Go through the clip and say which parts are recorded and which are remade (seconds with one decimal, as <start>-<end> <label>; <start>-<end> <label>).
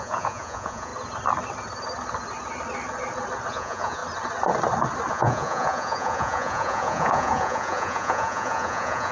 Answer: 0.0-0.9 remade; 0.9-3.5 recorded; 3.5-4.0 remade; 4.0-5.1 recorded; 5.1-9.1 remade